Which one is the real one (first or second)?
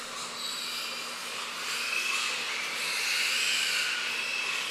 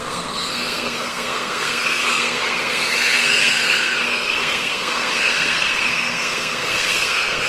first